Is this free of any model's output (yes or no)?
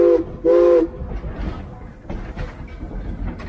yes